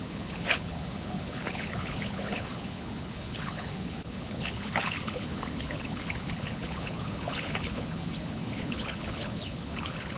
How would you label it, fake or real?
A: fake